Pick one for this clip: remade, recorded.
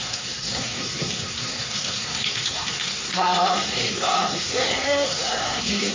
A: remade